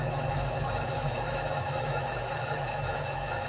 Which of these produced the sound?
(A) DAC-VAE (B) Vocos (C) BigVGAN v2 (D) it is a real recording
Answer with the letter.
A